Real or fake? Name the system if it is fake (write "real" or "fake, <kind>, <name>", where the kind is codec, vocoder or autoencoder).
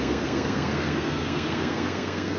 fake, codec, SNAC